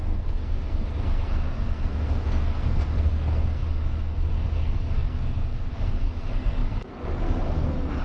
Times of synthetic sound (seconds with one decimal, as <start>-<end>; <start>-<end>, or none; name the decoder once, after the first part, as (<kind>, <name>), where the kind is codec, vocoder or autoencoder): 0.0-8.0 (codec, SNAC)